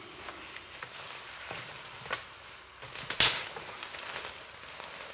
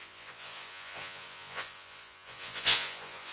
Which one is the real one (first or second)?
first